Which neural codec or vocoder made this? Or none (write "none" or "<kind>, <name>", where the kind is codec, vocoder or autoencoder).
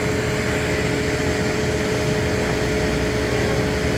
none